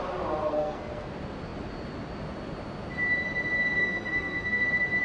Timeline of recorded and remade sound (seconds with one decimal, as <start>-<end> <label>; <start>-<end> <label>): 0.0-0.4 recorded; 0.4-1.1 remade; 1.1-3.8 recorded; 3.8-4.6 remade; 4.6-5.0 recorded